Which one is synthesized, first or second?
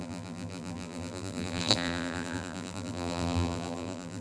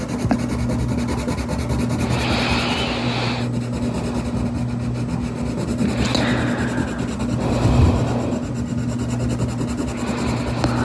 first